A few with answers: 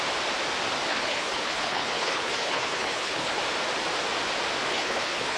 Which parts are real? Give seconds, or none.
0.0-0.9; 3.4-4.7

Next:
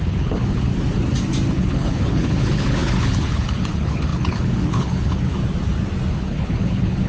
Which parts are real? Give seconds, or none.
0.7-1.5; 5.4-6.1

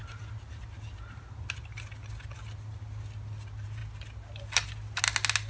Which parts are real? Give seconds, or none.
0.0-5.5

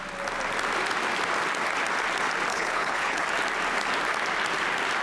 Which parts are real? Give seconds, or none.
0.0-2.5; 3.2-5.0

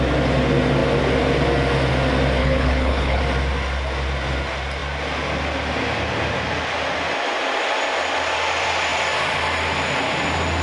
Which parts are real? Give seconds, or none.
0.0-2.4; 3.2-10.6

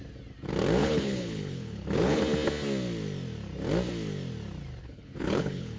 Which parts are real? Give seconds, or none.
0.0-0.8; 2.2-4.8

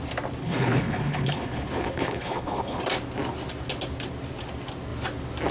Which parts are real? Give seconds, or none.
0.0-0.4; 2.8-5.5

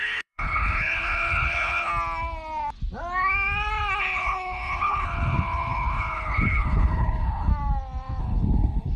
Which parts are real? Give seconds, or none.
1.9-4.0; 7.5-8.2